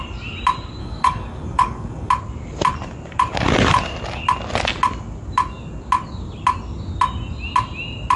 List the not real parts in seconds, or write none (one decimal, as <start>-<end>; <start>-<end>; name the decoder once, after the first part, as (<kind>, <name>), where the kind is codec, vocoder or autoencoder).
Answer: 0.8-2.1 (codec, DAC)